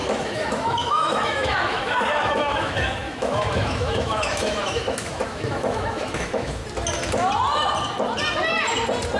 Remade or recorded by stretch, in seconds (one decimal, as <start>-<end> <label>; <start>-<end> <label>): 0.0-6.6 remade; 6.6-9.2 recorded